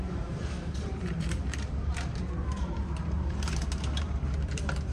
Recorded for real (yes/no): no